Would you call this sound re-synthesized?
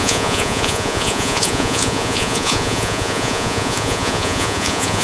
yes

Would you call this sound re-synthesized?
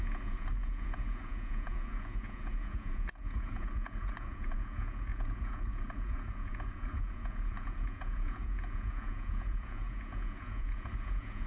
yes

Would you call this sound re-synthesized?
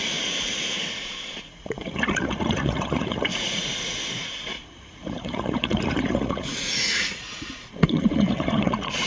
yes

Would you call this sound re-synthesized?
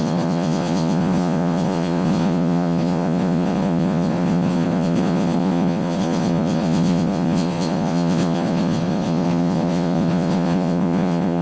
yes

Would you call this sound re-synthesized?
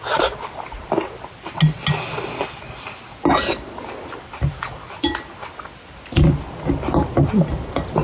no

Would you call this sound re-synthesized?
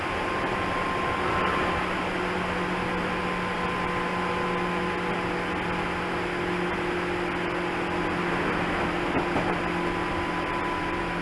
no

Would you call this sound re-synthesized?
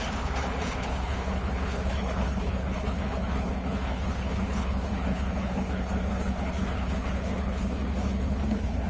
yes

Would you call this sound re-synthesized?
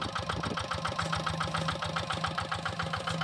no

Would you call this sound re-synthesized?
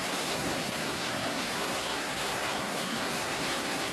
yes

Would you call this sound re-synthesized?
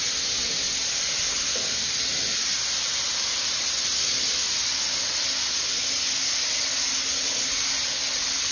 no